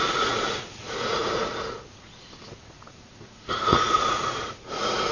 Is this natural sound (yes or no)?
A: no